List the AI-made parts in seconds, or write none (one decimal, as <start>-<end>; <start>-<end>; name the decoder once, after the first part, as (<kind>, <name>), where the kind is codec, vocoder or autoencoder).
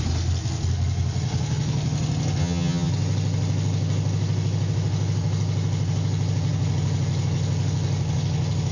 2.4-2.9 (vocoder, HiFi-GAN)